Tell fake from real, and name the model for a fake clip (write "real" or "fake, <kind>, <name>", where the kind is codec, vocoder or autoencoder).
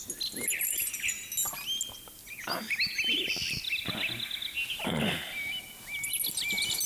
real